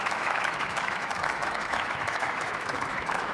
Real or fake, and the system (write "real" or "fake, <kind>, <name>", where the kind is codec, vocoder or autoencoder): fake, autoencoder, DAC-VAE